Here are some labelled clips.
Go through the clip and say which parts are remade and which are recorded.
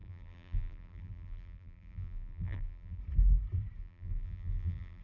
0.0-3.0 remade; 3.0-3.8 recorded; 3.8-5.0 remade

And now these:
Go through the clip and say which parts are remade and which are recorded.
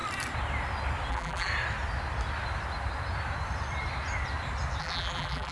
0.0-1.1 recorded; 1.1-1.5 remade; 1.5-4.8 recorded; 4.8-5.5 remade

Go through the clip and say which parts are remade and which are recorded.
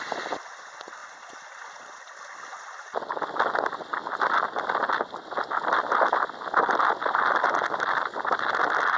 0.0-9.0 recorded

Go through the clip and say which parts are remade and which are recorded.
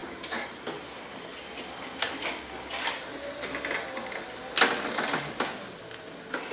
0.0-0.6 remade; 0.6-6.5 recorded